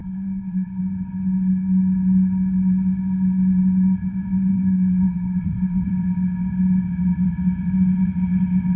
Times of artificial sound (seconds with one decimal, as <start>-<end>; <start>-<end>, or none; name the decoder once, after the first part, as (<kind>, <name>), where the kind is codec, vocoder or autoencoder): 0.0-0.8 (codec, SNAC); 4.5-5.9